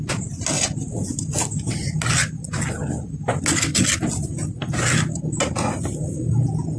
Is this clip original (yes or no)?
yes